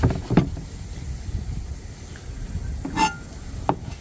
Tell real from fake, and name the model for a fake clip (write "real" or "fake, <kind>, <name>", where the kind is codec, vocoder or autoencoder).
real